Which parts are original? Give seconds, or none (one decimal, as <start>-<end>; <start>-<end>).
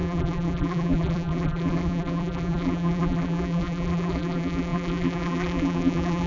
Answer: none